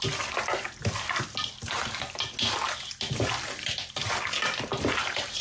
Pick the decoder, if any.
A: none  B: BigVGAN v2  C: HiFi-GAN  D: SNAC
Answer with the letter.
A